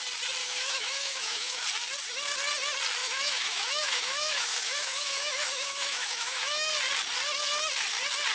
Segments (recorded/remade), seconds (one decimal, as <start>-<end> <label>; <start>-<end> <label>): 0.0-0.4 recorded; 0.4-1.6 remade; 1.6-3.0 recorded; 3.0-6.7 remade; 6.7-8.3 recorded